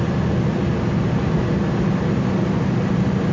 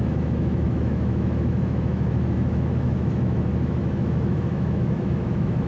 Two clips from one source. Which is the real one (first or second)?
first